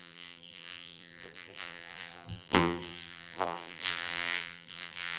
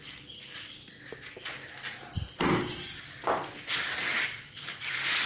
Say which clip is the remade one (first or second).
first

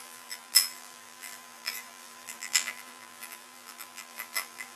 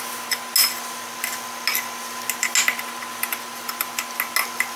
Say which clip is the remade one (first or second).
first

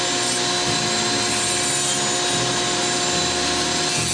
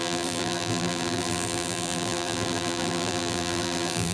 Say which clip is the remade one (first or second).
second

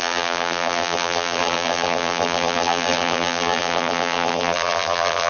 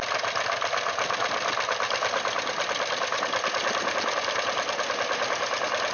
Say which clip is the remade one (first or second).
first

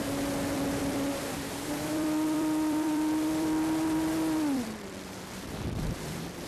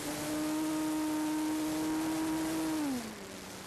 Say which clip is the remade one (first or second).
first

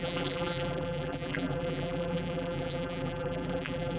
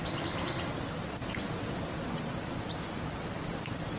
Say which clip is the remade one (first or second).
first